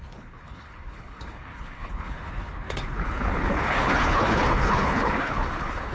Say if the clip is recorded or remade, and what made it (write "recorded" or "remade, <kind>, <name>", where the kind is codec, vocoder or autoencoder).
remade, codec, HILCodec